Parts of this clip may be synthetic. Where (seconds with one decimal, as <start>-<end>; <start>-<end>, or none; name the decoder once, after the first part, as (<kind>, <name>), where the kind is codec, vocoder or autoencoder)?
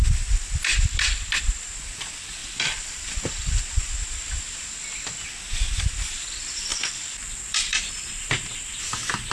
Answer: 2.4-3.6 (vocoder, BigVGAN v2); 6.7-8.3